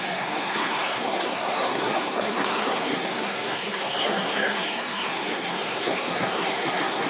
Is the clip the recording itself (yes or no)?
no